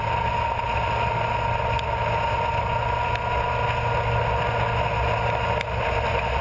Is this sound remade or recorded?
recorded